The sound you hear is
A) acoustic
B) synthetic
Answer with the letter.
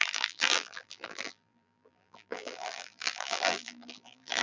B